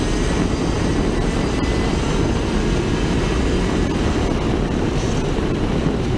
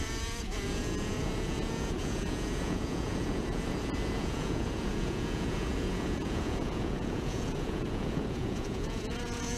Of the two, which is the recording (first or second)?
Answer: first